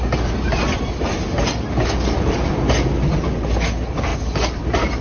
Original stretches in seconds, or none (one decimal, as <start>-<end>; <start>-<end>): 0.0-5.0